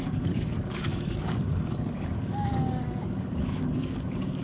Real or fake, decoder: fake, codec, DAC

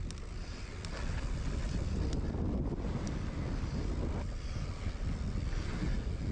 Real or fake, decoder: real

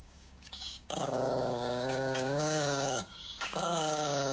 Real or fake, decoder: fake, codec, DAC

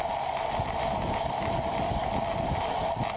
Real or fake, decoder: real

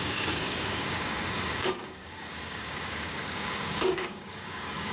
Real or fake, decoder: fake, codec, DAC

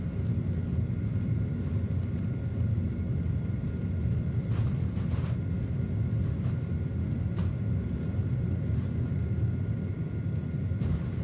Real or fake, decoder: real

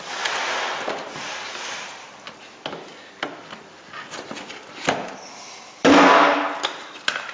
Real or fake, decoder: real